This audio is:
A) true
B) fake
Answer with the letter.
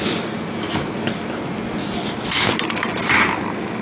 A